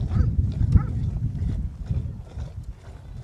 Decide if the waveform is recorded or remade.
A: recorded